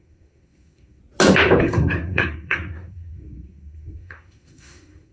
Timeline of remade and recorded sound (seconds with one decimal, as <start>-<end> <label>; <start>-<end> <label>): 0.0-1.0 remade; 1.0-1.6 recorded; 1.6-5.1 remade